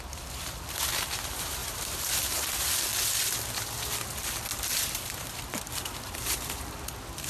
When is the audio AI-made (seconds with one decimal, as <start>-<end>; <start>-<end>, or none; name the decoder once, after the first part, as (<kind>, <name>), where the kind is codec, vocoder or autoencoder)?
1.6-2.6 (vocoder, BigVGAN v2); 4.5-5.4